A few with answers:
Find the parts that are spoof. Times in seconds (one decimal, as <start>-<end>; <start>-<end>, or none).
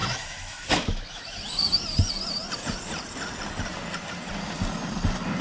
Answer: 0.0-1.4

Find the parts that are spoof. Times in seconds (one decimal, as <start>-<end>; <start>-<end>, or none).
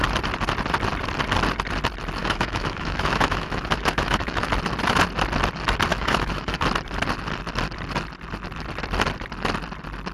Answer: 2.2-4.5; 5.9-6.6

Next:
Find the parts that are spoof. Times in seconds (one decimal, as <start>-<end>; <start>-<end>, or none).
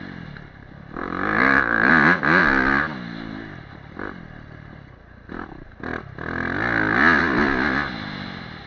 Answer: 1.0-1.9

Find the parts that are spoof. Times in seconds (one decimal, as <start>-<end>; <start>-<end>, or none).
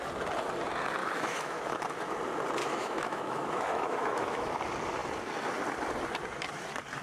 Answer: 1.0-1.8; 2.6-4.5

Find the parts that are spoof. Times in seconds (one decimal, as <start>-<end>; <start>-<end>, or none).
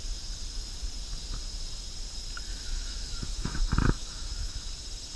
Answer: 2.5-3.6; 4.0-4.7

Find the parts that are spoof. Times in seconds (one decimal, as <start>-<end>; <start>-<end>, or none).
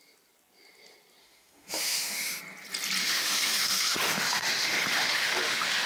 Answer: 1.2-2.4; 3.0-5.9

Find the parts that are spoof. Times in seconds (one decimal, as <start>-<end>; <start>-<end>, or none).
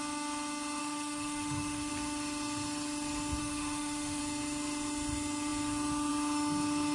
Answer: 0.8-1.9; 3.4-4.2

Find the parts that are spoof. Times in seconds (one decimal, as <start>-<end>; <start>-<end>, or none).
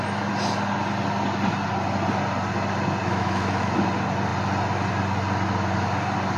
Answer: 3.0-3.7